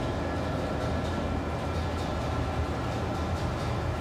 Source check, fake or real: real